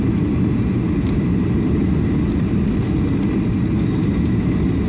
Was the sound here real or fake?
real